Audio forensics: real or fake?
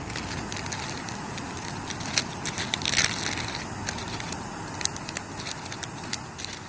real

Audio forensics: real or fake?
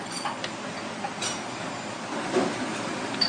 real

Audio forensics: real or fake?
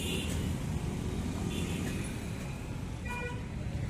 real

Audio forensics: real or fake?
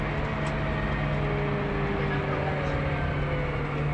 real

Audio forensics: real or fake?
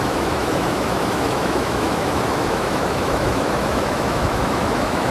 fake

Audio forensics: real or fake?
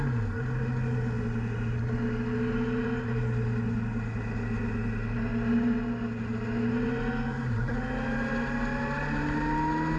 real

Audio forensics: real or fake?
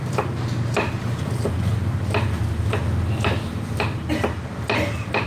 real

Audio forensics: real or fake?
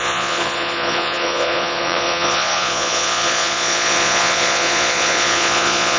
fake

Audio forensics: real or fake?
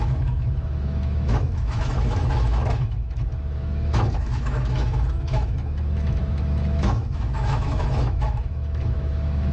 fake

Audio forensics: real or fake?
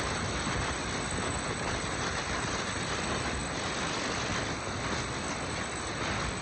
real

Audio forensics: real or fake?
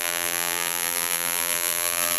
fake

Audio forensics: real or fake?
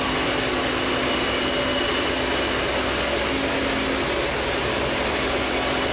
real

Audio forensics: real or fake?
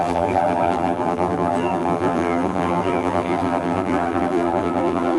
fake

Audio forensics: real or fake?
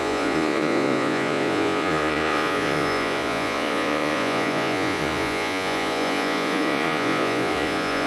fake